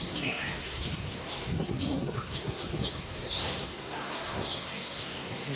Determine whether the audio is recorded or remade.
remade